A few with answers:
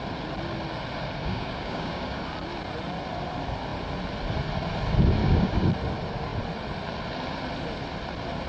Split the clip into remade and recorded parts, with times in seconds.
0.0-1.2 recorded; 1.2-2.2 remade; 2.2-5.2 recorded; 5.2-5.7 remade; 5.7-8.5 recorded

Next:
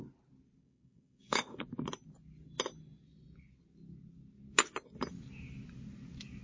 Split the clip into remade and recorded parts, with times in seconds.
0.0-0.6 recorded; 0.6-1.6 remade; 1.6-6.4 recorded

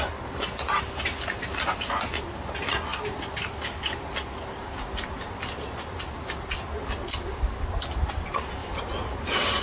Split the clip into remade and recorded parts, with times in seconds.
0.0-9.6 recorded

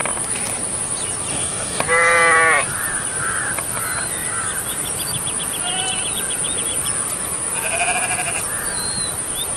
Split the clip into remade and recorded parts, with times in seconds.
0.0-1.3 recorded; 1.3-1.8 remade; 1.8-9.6 recorded

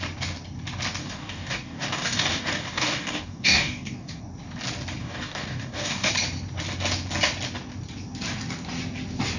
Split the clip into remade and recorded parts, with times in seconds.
0.0-1.0 recorded; 1.0-4.2 remade; 4.2-5.0 recorded; 5.0-6.1 remade; 6.1-9.4 recorded

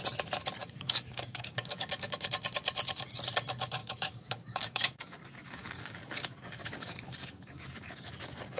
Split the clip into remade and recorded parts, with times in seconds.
0.0-0.6 recorded; 0.6-2.3 remade; 2.3-3.8 recorded; 3.8-8.6 remade

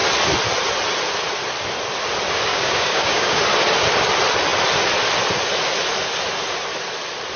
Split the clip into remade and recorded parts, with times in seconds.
0.0-2.5 recorded; 2.5-3.4 remade; 3.4-7.4 recorded